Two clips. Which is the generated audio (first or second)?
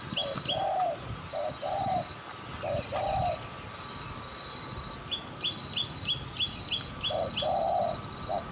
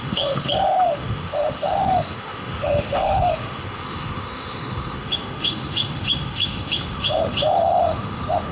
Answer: second